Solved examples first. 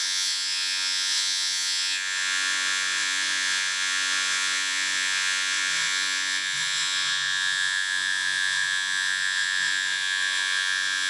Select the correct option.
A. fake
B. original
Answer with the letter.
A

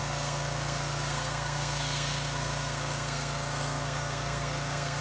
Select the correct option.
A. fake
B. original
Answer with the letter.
A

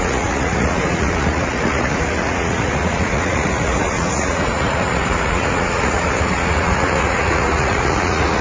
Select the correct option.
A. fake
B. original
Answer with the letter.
A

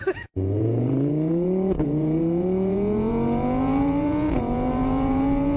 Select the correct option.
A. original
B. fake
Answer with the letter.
B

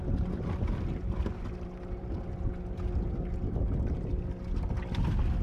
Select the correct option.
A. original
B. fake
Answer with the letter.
A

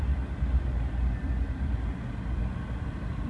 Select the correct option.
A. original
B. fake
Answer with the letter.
A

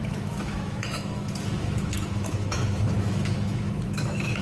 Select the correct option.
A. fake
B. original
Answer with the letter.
A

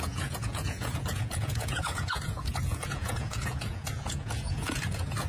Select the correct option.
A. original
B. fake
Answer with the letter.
B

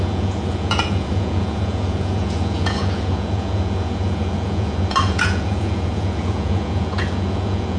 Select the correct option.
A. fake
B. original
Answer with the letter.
A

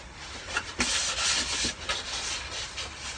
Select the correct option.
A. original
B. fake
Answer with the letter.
A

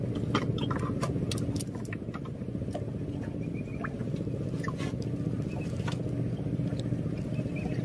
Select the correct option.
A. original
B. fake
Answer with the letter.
A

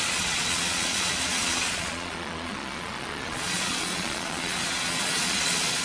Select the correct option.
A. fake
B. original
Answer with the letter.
A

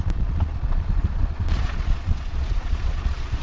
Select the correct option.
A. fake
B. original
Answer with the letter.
A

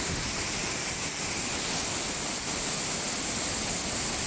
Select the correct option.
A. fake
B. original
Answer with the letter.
B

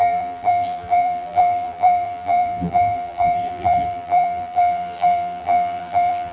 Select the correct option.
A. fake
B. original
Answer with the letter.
A